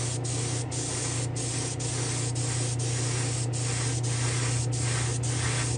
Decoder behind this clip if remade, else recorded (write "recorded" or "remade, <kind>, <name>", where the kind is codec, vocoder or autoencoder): recorded